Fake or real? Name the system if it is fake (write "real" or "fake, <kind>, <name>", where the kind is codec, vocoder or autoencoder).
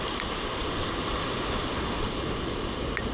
real